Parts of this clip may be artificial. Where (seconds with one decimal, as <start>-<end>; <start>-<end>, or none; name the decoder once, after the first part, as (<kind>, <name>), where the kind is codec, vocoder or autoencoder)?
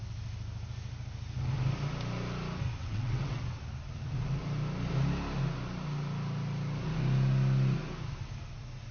2.8-3.4 (vocoder, WaveNeXt)